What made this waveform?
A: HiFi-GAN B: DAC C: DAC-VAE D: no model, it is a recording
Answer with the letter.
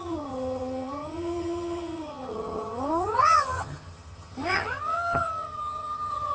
A